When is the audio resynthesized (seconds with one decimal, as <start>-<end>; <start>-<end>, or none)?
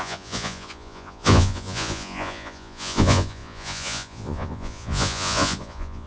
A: 0.0-6.1